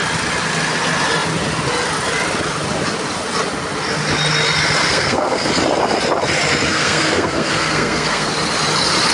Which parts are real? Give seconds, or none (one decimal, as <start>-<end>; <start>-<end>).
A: 0.0-4.8; 5.5-6.7; 8.3-9.1